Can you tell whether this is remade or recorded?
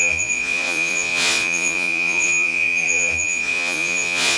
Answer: remade